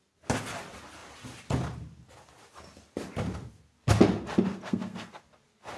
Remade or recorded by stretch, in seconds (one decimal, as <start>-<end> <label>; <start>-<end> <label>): 0.0-4.5 recorded; 4.5-5.2 remade; 5.2-5.8 recorded